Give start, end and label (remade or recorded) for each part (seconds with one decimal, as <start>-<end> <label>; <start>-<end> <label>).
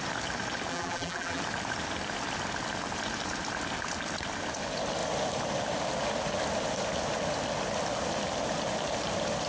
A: 0.0-0.7 recorded; 0.7-1.4 remade; 1.4-9.5 recorded